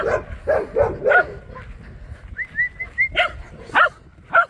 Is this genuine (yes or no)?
yes